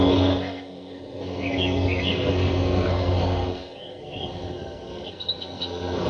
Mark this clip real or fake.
fake